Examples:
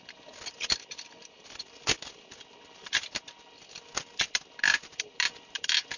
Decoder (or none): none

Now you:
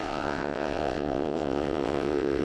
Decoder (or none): vocoder, WaveNeXt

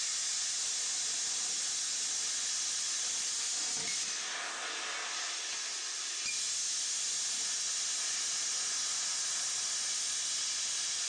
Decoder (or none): none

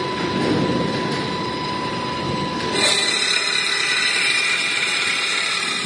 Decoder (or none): none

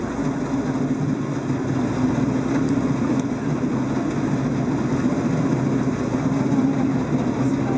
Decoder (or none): none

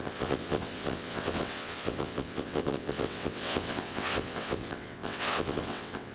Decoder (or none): vocoder, WaveNeXt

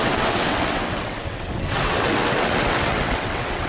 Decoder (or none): vocoder, WaveNeXt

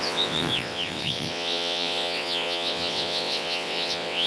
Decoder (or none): vocoder, WaveNeXt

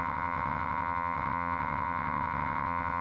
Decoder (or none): vocoder, WaveNeXt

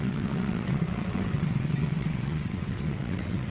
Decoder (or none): vocoder, WaveNeXt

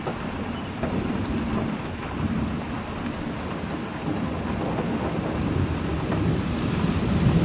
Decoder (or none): none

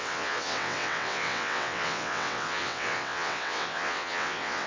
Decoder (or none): vocoder, WaveNeXt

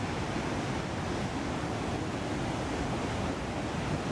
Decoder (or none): none